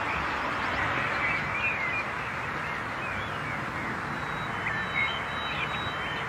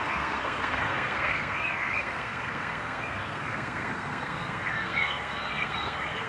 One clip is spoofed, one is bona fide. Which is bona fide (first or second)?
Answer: first